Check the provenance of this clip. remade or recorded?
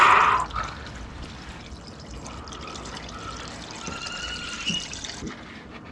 recorded